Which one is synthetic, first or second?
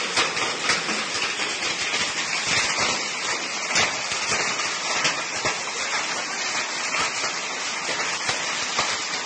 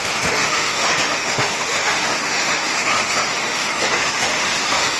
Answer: second